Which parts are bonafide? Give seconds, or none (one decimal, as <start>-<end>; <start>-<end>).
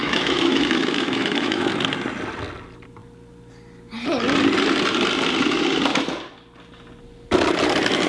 1.7-8.1